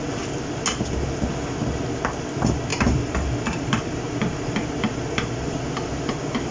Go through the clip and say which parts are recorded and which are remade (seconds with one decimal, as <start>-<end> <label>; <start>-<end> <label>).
0.0-2.7 recorded; 2.7-6.1 remade; 6.1-6.5 recorded